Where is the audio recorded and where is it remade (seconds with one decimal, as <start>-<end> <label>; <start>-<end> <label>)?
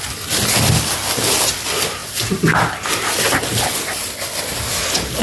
0.0-5.2 recorded